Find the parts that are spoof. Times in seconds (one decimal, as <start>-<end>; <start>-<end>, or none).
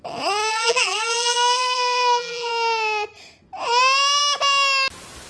0.5-2.5